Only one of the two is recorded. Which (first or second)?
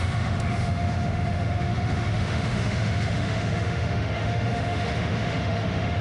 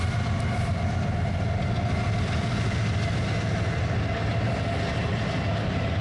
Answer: second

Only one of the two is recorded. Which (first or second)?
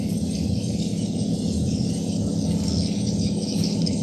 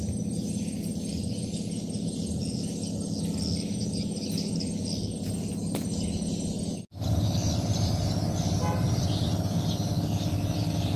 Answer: second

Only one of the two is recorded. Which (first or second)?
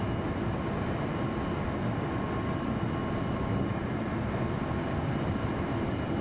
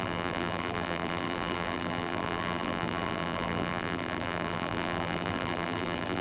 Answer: first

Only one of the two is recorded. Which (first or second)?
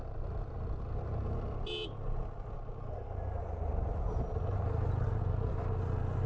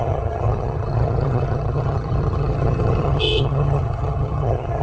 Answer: first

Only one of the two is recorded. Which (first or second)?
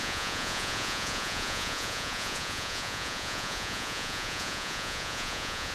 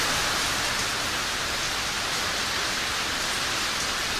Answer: second